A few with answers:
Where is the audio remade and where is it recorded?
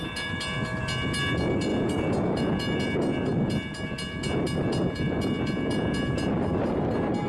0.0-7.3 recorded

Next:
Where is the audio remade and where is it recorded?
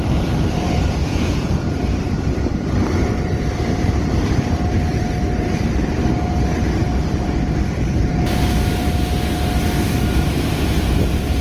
0.0-1.0 recorded; 1.0-1.8 remade; 1.8-11.4 recorded